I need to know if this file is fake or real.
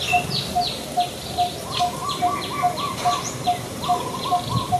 real